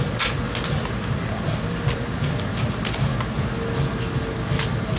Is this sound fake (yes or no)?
no